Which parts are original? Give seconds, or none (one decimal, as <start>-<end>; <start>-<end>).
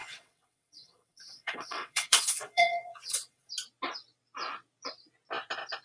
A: 3.5-5.8